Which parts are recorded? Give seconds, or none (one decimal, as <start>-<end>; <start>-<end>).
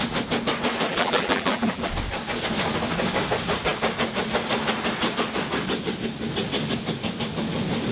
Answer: 0.0-0.9; 1.9-7.9